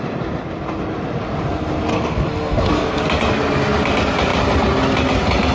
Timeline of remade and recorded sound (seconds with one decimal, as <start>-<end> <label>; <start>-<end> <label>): 0.0-1.9 recorded; 1.9-3.0 remade; 3.0-5.5 recorded

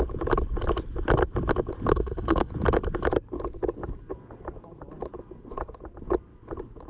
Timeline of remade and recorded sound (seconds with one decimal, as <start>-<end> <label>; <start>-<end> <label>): 0.0-1.9 recorded; 1.9-2.5 remade; 2.5-6.9 recorded

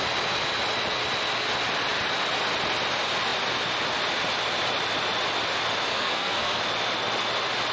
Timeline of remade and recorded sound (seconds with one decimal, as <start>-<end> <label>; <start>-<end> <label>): 0.0-5.9 recorded; 5.9-6.6 remade; 6.6-7.7 recorded

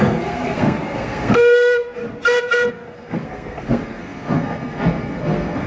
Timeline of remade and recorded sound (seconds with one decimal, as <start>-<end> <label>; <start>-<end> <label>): 0.0-2.0 remade; 2.0-2.7 recorded; 2.7-5.7 remade

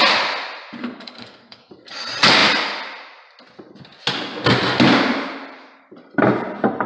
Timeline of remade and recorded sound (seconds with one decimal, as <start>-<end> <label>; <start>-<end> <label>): 0.0-0.8 recorded; 0.8-1.7 remade; 1.7-6.9 recorded

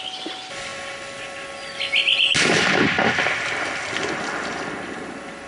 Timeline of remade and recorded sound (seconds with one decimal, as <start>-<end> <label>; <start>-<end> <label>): 0.0-5.5 recorded